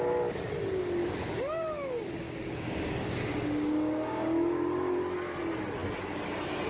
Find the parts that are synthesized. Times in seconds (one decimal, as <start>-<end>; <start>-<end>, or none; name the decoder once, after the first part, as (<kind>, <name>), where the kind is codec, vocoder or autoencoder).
1.0-5.0 (codec, DAC)